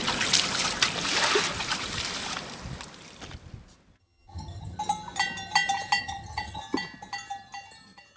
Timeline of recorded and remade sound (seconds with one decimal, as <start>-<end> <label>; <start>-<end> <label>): 0.0-4.0 recorded; 4.0-4.8 remade; 4.8-6.0 recorded; 6.0-6.6 remade; 6.6-8.2 recorded

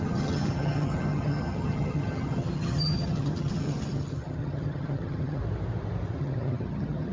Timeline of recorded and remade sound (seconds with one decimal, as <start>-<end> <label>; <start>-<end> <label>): 0.0-5.4 remade; 5.4-6.2 recorded; 6.2-7.1 remade

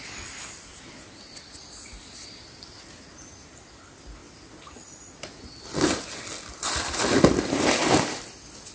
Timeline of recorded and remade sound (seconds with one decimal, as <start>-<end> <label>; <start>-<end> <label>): 0.0-8.7 recorded

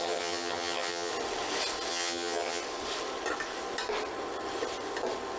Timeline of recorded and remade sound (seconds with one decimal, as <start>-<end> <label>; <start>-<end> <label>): 0.0-1.1 remade; 1.1-1.9 recorded; 1.9-2.6 remade; 2.6-5.4 recorded

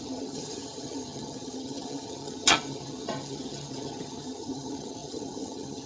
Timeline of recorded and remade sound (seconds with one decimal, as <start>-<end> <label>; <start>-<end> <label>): 0.0-5.9 remade

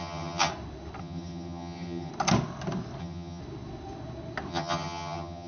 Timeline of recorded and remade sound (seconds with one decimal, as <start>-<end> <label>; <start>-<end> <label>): 0.0-0.5 remade; 0.5-1.0 recorded; 1.0-2.1 remade; 2.1-3.0 recorded; 3.0-3.4 remade; 3.4-4.5 recorded; 4.5-5.5 remade

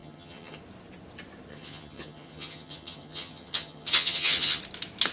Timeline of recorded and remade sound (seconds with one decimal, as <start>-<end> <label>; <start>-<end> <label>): 0.0-0.6 remade; 0.6-1.5 recorded; 1.5-4.6 remade; 4.6-5.1 recorded